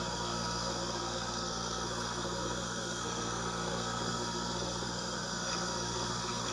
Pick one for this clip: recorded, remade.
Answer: remade